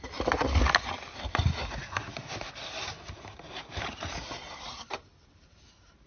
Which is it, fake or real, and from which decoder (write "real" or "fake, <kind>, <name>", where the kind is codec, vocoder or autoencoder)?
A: real